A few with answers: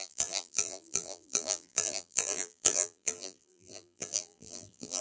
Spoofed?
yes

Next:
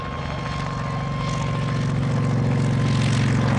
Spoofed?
no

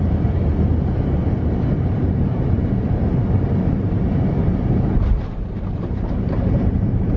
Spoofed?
yes